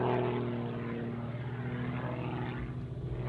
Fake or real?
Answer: real